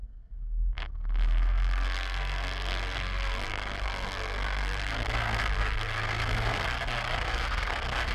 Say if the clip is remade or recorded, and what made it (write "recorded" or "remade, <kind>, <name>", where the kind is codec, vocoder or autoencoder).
remade, codec, SNAC